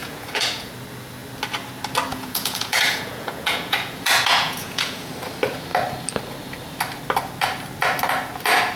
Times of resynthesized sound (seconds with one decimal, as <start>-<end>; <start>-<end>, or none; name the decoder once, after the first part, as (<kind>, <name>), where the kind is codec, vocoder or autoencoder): 0.0-0.7 (vocoder, Vocos); 2.1-5.1